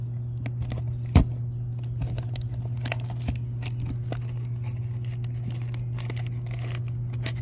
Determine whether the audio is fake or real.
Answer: real